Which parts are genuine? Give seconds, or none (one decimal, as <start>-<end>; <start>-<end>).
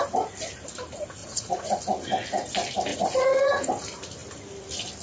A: 0.0-1.2; 1.8-2.9; 3.7-5.0